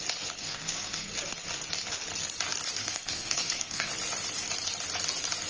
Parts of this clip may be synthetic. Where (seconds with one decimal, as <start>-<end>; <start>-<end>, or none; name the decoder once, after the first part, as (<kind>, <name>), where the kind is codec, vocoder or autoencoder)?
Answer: 0.4-1.1 (codec, SNAC); 2.8-3.9